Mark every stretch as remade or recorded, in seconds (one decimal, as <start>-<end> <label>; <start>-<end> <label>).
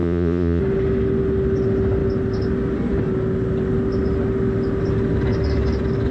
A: 0.0-0.6 remade; 0.6-6.1 recorded